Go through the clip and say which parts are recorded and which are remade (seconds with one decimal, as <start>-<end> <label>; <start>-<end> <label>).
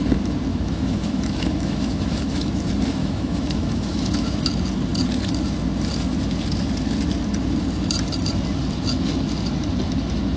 0.0-0.5 recorded; 0.5-2.6 remade; 2.6-3.0 recorded; 3.0-4.5 remade; 4.5-10.4 recorded